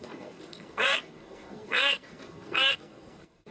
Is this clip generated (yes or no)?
yes